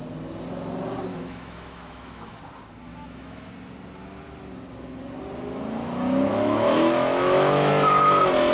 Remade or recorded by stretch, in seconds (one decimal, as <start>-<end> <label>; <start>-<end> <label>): 0.0-1.1 recorded; 1.1-2.4 remade; 2.4-2.9 recorded; 2.9-3.5 remade; 3.5-6.3 recorded; 6.3-7.7 remade; 7.7-8.5 recorded